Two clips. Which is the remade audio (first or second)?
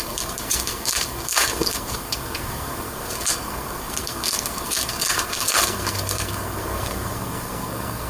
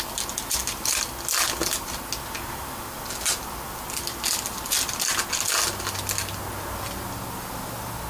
first